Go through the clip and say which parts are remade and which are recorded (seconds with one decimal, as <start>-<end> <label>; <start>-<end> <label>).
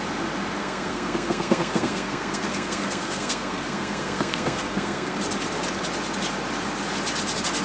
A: 0.0-0.6 recorded; 0.6-5.2 remade; 5.2-7.6 recorded